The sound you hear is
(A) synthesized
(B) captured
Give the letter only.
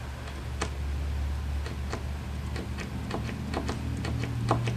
B